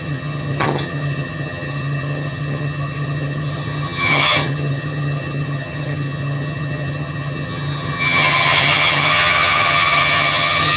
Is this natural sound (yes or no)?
no